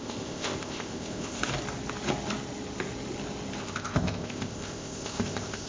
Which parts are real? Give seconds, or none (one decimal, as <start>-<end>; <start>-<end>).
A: 1.4-3.6